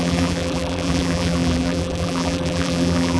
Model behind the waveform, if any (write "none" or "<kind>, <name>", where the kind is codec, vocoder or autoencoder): vocoder, BigVGAN v2